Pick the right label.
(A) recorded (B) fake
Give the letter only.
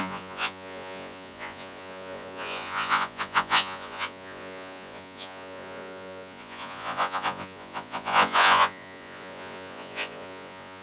B